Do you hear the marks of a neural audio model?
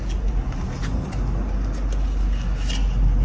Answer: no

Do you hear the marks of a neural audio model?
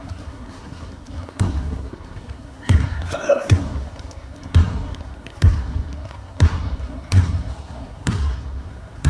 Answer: yes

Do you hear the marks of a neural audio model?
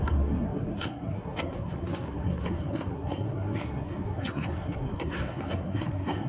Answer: yes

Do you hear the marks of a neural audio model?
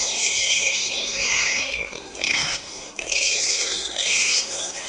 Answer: yes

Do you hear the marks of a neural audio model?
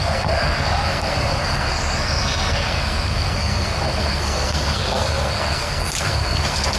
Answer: yes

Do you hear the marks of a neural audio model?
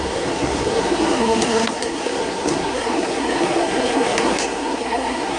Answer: yes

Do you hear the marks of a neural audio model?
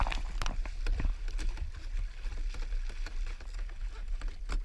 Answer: no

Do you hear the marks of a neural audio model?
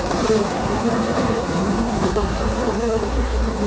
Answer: yes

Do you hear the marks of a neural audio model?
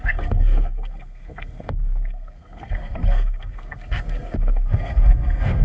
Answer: yes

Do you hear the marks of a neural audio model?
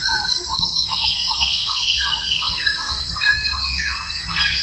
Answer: yes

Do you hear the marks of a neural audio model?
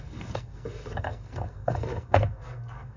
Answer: yes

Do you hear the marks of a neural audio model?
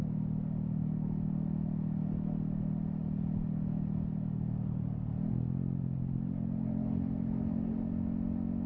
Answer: no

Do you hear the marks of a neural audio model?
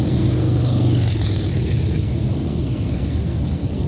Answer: yes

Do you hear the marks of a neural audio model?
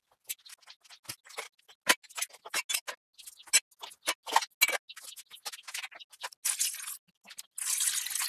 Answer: no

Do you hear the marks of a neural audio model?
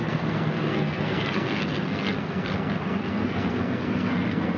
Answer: yes